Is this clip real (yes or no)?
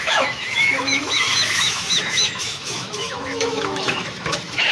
no